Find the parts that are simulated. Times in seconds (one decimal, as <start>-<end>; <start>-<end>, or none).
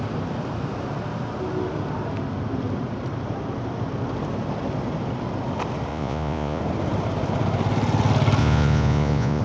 5.9-6.6; 8.4-9.4